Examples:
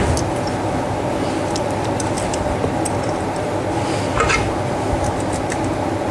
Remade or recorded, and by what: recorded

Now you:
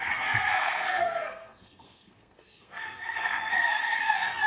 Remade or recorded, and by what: remade, codec, SNAC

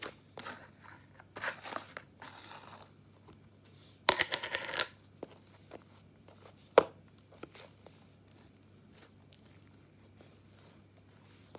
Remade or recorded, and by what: recorded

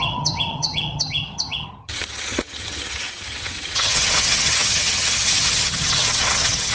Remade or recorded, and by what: remade, vocoder, HiFi-GAN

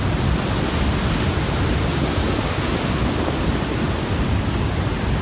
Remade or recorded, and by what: recorded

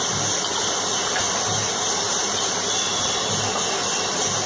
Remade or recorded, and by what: recorded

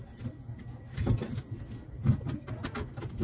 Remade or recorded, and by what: recorded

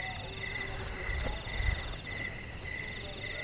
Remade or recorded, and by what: recorded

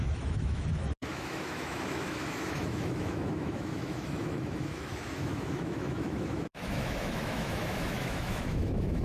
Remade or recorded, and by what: remade, autoencoder, DAC-VAE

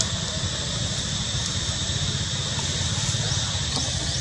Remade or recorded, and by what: recorded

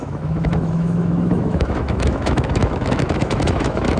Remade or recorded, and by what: remade, autoencoder, DAC-VAE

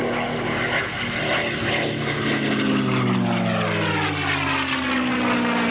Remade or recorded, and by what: recorded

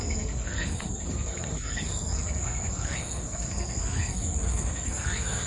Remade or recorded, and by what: remade, codec, SNAC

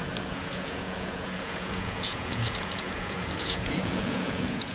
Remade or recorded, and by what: remade, vocoder, Vocos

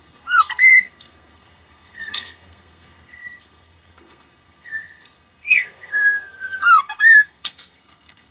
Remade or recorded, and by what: remade, codec, SNAC